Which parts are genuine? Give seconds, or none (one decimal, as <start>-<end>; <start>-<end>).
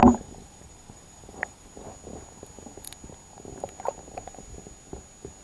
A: 1.7-5.4